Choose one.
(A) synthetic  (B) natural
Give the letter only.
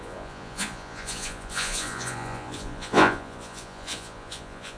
A